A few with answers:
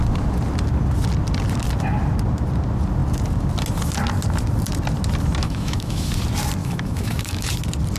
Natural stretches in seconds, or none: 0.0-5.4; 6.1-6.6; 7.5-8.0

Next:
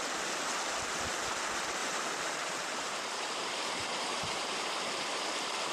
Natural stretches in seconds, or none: 0.0-1.8; 5.0-5.7